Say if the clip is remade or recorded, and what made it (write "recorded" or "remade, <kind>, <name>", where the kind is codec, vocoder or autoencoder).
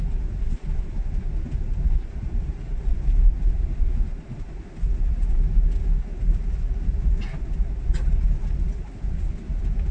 recorded